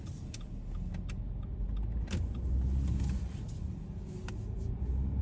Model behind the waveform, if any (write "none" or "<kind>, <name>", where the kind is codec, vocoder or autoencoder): none